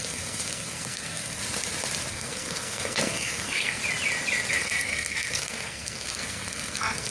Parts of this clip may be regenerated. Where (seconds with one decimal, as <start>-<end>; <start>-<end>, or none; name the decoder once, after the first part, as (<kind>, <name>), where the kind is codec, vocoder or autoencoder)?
0.0-1.4 (codec, SNAC); 2.1-3.8; 4.5-7.1

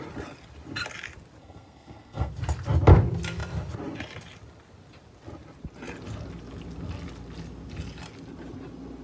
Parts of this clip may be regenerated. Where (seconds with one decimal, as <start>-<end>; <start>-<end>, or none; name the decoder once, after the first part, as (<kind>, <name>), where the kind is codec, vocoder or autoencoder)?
1.4-2.3 (codec, SNAC)

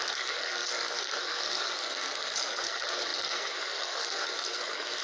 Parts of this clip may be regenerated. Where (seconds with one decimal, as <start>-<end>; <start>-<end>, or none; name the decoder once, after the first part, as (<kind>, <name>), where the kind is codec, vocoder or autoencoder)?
0.0-5.0 (codec, SNAC)